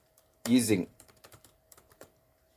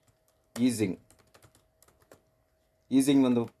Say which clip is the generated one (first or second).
first